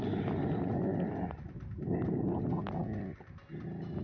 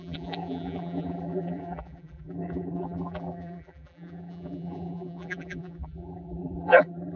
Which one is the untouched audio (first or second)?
first